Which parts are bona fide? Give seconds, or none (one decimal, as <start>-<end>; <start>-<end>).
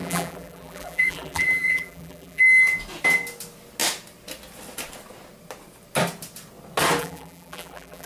2.4-7.0